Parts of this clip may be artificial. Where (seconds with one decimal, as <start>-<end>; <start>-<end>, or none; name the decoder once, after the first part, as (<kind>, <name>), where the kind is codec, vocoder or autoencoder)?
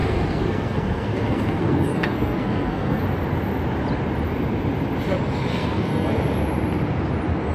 0.0-3.0 (codec, SNAC); 5.5-6.1